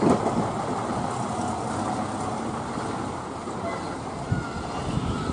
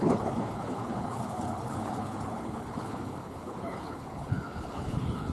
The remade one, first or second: second